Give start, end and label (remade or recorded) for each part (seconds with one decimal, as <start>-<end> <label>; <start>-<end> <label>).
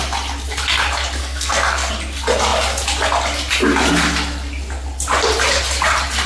0.0-1.2 recorded; 1.2-1.9 remade; 1.9-6.3 recorded